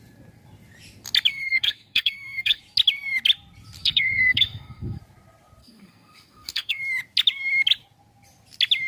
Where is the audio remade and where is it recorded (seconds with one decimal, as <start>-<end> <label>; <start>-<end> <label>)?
0.0-1.3 recorded; 1.3-2.6 remade; 2.6-3.8 recorded; 3.8-5.0 remade; 5.0-5.6 recorded; 5.6-6.8 remade; 6.8-8.9 recorded